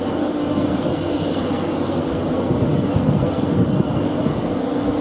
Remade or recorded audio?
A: remade